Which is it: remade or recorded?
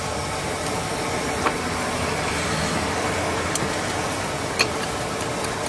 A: recorded